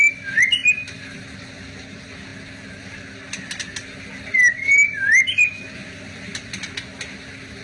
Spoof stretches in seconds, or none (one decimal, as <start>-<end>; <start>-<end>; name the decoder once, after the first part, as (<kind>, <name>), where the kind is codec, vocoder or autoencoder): none